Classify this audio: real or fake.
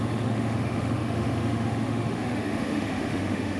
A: fake